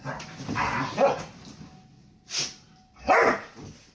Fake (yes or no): no